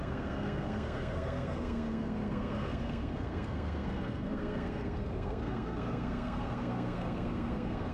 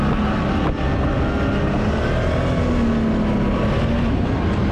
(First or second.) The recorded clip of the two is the second